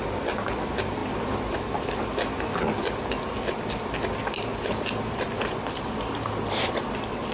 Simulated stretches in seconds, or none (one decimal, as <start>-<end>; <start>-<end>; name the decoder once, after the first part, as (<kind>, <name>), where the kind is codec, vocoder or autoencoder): 4.5-6.8 (vocoder, BigVGAN v2)

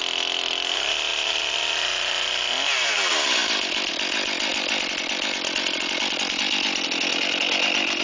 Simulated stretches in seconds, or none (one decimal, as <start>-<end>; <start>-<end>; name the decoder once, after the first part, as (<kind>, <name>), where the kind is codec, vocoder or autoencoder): 1.1-1.7 (vocoder, BigVGAN v2); 3.4-3.9; 4.5-6.5

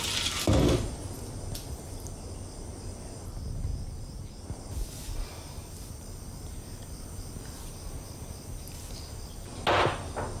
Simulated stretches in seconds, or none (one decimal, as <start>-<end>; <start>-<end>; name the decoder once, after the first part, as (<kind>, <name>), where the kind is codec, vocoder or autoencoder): 3.7-4.7 (vocoder, BigVGAN v2)

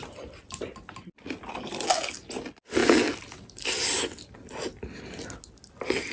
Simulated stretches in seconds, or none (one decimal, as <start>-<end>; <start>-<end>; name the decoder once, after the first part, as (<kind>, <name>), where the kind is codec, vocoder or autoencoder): none

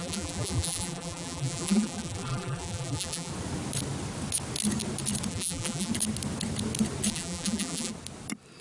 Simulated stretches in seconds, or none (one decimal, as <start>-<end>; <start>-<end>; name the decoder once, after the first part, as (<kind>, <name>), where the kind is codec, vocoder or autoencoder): 0.0-3.3 (vocoder, BigVGAN v2); 5.3-5.9; 7.1-7.9

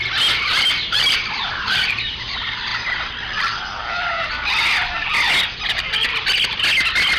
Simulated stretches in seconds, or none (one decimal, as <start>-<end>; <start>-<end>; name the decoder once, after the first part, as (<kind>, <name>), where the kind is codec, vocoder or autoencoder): 0.5-2.2 (vocoder, BigVGAN v2)

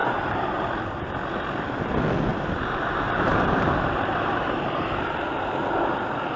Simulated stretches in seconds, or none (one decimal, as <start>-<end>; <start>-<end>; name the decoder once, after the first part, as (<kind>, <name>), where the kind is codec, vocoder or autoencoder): 0.0-1.1 (vocoder, BigVGAN v2); 2.3-5.6